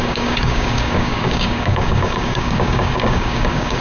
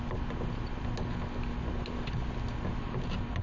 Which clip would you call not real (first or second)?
first